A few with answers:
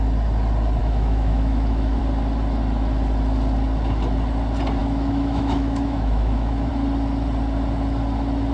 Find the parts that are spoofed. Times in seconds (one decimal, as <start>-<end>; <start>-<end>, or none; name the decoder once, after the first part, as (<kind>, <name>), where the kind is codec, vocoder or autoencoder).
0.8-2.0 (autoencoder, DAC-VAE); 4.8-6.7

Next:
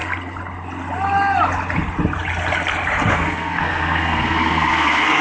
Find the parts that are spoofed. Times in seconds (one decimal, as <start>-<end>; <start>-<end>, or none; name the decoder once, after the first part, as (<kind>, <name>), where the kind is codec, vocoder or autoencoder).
3.1-5.2 (codec, SNAC)

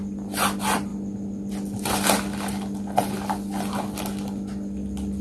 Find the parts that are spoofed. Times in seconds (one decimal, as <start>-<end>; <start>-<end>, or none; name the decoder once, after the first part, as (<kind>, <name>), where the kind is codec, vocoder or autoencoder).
none

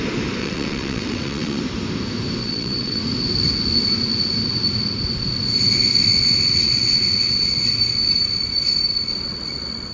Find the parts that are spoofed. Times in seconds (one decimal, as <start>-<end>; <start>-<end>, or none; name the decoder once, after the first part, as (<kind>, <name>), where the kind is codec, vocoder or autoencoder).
0.4-1.6 (vocoder, WaveNeXt); 2.4-3.0; 6.1-7.7; 9.1-9.9